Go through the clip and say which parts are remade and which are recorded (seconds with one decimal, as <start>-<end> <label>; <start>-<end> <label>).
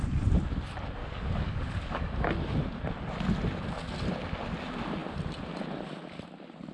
0.0-1.0 recorded; 1.0-2.1 remade; 2.1-6.7 recorded